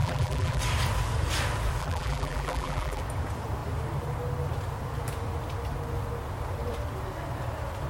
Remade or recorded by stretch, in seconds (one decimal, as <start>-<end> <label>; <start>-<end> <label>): 0.0-0.6 remade; 0.6-1.8 recorded; 1.8-3.0 remade; 3.0-7.9 recorded

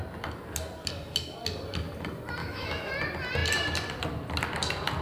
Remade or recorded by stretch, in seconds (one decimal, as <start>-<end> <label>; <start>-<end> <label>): 0.0-2.4 recorded; 2.4-2.9 remade; 2.9-5.0 recorded

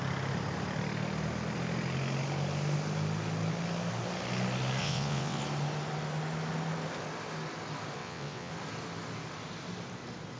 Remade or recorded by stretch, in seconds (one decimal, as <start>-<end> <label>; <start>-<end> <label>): 0.0-4.8 recorded; 4.8-5.4 remade; 5.4-8.0 recorded; 8.0-8.5 remade; 8.5-10.4 recorded

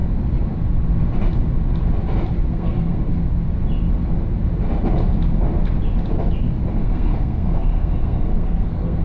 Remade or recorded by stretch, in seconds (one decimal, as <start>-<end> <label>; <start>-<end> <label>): 0.0-2.5 recorded; 2.5-3.0 remade; 3.0-6.7 recorded; 6.7-9.0 remade

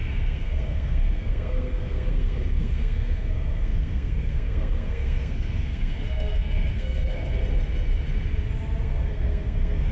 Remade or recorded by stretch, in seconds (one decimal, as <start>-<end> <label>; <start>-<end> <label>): 0.0-7.4 remade; 7.4-8.8 recorded; 8.8-9.9 remade

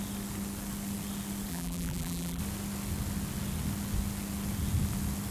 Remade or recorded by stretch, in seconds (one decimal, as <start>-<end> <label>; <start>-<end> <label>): 0.0-1.5 recorded; 1.5-2.4 remade; 2.4-5.3 recorded

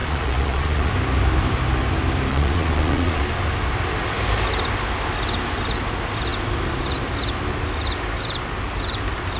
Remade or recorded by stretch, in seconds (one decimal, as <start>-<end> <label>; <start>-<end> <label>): 0.0-0.9 remade; 0.9-2.3 recorded; 2.3-3.2 remade; 3.2-9.4 recorded

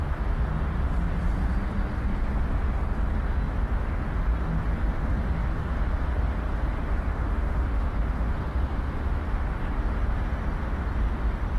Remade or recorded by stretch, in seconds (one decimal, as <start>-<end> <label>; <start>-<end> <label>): 0.0-7.1 recorded; 7.1-8.3 remade; 8.3-11.6 recorded